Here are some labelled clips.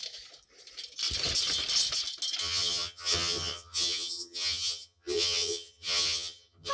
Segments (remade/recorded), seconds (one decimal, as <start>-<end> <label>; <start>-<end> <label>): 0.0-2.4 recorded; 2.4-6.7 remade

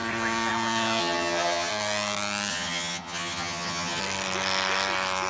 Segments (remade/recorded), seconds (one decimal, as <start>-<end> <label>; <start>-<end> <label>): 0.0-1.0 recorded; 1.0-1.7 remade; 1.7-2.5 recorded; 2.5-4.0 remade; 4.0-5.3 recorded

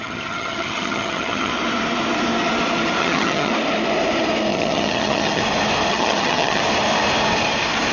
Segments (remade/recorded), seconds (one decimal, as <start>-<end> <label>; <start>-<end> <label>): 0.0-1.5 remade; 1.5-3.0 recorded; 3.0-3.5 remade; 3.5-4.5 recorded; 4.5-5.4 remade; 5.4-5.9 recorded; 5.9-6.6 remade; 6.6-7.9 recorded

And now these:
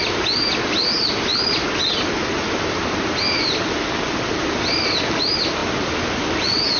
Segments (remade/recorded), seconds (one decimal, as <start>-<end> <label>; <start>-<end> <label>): 0.0-6.8 recorded